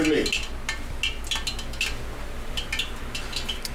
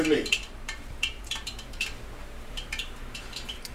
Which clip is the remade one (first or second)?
second